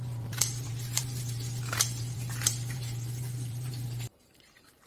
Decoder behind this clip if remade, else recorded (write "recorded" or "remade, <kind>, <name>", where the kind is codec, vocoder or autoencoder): remade, vocoder, BigVGAN v2